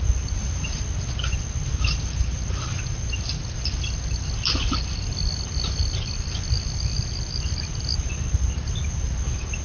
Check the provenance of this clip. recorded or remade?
recorded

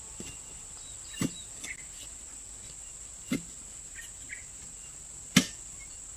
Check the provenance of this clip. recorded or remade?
remade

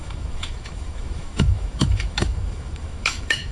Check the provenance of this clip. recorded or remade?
remade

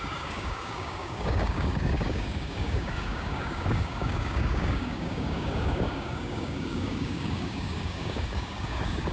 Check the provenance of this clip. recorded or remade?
remade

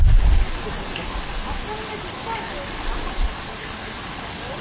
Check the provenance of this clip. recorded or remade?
recorded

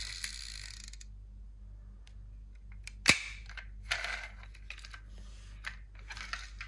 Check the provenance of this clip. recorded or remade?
recorded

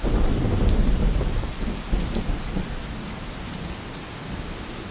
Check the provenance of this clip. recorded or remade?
recorded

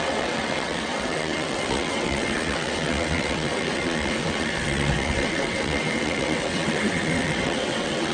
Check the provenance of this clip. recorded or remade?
remade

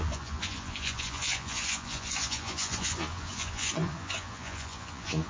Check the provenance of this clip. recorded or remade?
remade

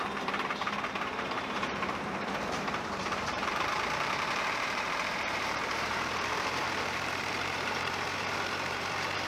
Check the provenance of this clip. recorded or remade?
remade